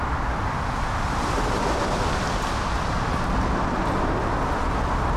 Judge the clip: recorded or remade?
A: recorded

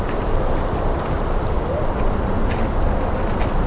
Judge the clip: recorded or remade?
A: recorded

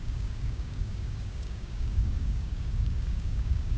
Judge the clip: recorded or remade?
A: remade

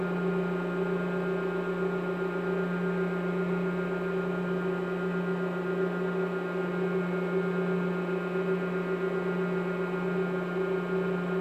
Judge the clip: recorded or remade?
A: recorded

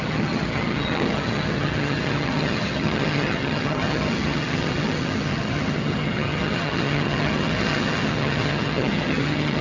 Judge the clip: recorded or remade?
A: remade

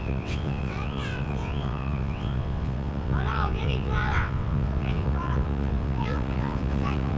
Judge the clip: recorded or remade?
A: remade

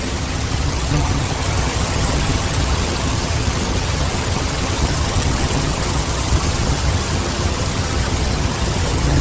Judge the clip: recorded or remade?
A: remade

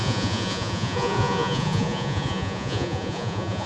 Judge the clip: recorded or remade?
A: remade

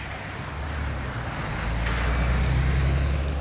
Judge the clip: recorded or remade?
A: recorded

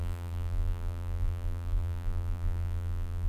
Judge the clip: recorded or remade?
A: remade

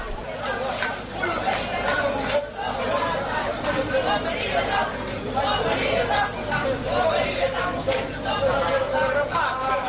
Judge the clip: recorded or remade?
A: recorded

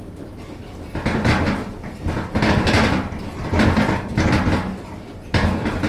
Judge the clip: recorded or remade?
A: recorded